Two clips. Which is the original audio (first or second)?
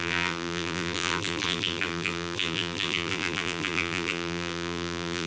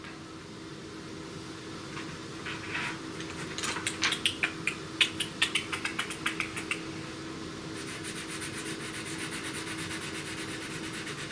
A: second